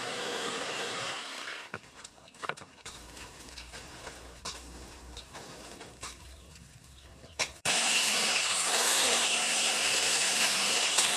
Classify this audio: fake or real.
fake